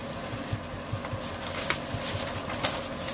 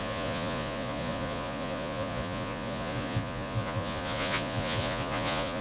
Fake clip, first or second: second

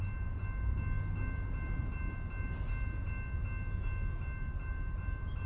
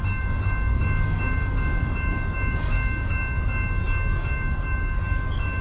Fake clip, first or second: second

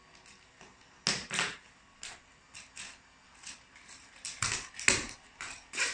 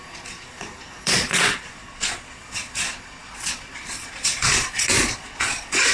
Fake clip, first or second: second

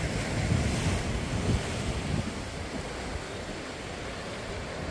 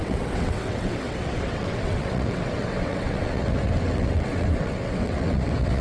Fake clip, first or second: second